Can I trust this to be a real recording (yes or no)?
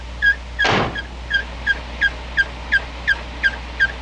yes